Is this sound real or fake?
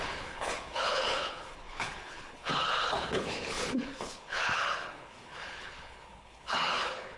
fake